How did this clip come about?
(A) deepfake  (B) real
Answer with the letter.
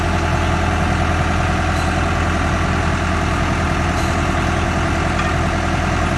B